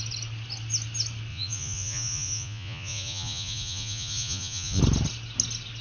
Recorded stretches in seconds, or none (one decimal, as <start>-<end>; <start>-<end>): 0.0-1.3; 4.8-5.8